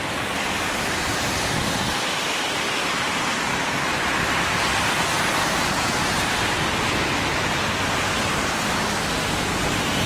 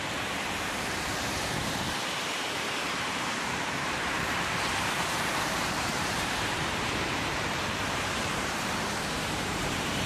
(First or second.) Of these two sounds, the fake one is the second